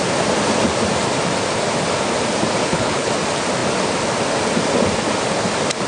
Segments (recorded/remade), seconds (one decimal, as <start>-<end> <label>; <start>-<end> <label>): 0.0-2.6 recorded; 2.6-3.1 remade; 3.1-5.9 recorded